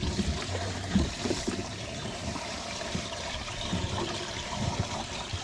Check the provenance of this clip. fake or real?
fake